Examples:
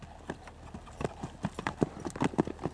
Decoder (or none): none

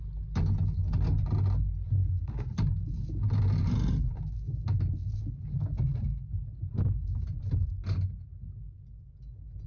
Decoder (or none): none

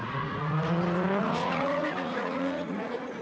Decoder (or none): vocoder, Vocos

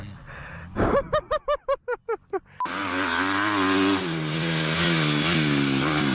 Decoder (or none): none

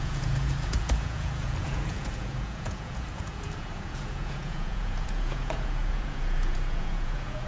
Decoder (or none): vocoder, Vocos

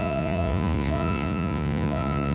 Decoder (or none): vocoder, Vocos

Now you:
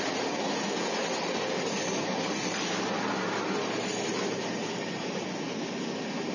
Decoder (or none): none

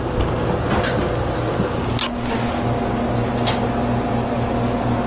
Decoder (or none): none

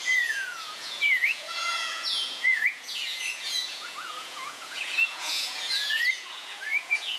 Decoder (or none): vocoder, Vocos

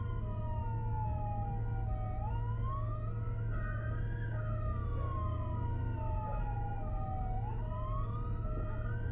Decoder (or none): none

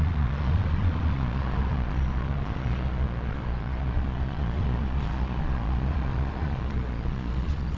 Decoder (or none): vocoder, Vocos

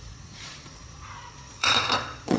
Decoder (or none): vocoder, Vocos